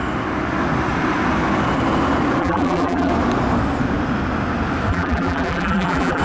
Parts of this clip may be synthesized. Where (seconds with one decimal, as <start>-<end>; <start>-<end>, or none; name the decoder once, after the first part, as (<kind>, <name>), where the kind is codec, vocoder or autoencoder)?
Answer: 2.4-3.1 (vocoder, BigVGAN v2); 4.9-6.2